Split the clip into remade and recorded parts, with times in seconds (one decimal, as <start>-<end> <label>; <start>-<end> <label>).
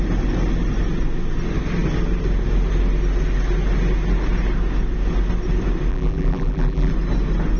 0.0-5.9 recorded; 5.9-6.9 remade; 6.9-7.6 recorded